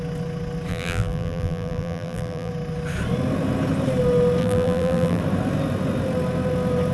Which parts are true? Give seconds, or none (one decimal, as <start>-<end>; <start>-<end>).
0.0-0.7; 2.5-4.4; 5.2-6.9